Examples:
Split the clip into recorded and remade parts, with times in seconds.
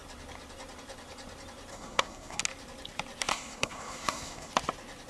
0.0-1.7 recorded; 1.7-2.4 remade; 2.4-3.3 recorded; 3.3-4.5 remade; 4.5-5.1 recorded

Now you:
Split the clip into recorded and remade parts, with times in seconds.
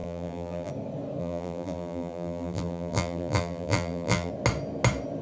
0.0-0.7 remade; 0.7-1.2 recorded; 1.2-4.3 remade; 4.3-5.2 recorded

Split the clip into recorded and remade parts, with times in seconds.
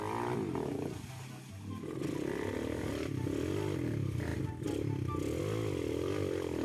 0.0-6.6 recorded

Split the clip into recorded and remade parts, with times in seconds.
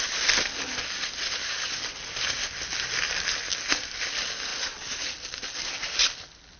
0.0-6.6 recorded